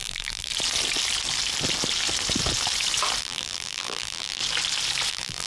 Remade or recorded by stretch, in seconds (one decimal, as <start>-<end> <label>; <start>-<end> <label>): 0.0-0.5 remade; 0.5-3.2 recorded; 3.2-4.4 remade; 4.4-5.1 recorded; 5.1-5.5 remade